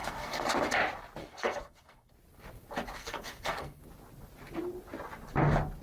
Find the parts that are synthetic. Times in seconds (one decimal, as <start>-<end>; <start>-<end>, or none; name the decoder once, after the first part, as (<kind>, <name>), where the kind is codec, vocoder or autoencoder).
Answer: 0.0-0.5 (codec, SNAC); 1.2-2.1; 3.0-3.8